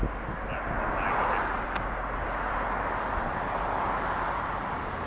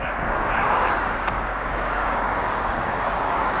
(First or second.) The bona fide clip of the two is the first